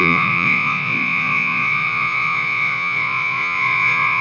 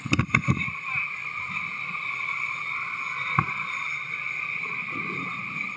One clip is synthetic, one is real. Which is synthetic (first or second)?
first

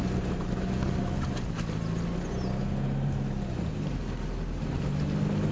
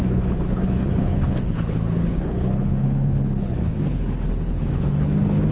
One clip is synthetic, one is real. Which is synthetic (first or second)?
second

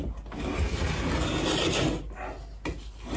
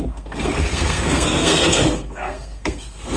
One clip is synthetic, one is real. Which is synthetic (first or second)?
second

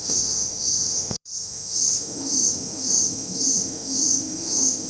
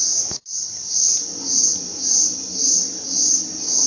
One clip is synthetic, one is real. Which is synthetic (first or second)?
first